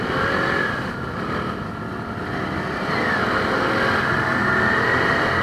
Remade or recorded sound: remade